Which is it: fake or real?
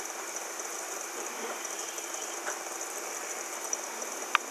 real